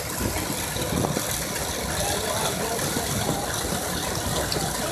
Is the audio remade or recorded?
recorded